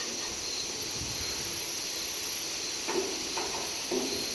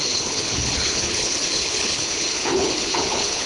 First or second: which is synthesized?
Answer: second